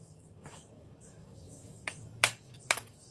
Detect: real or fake fake